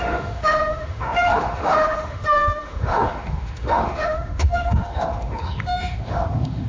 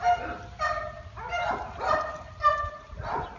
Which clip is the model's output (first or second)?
first